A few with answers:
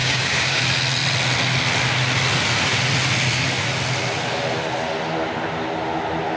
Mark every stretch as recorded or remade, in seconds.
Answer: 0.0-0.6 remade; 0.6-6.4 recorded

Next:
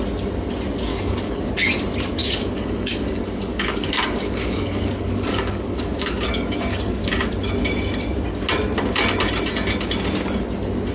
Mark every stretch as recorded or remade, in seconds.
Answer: 0.0-0.9 recorded; 0.9-1.5 remade; 1.5-2.2 recorded; 2.2-7.1 remade; 7.1-10.9 recorded

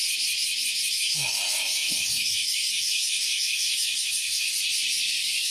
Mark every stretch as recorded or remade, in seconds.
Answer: 0.0-0.9 recorded; 0.9-4.5 remade; 4.5-5.1 recorded; 5.1-5.5 remade

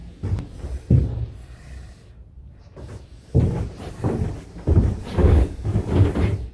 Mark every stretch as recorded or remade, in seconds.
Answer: 0.0-5.2 recorded; 5.2-6.1 remade; 6.1-6.5 recorded

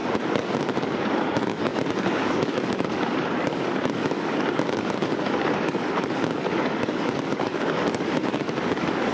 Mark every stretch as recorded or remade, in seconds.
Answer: 0.0-9.1 remade

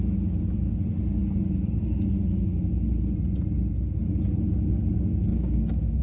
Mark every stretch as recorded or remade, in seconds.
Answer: 0.0-5.3 recorded; 5.3-6.0 remade

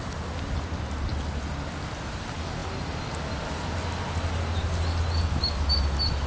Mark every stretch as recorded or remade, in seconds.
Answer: 0.0-6.3 recorded

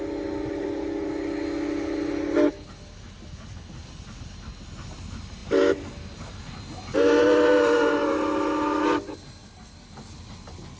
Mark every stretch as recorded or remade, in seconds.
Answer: 0.0-10.8 recorded